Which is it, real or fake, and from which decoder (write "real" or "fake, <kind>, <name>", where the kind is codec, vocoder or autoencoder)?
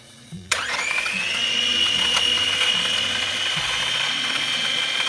fake, vocoder, Vocos